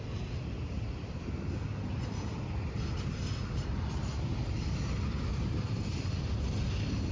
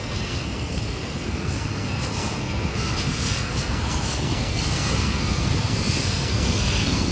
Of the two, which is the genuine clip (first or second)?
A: first